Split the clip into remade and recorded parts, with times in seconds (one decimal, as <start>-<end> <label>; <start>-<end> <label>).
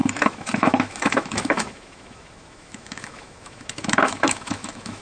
0.0-5.0 remade